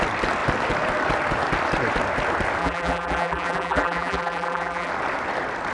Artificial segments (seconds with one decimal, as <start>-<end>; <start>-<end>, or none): 2.6-4.9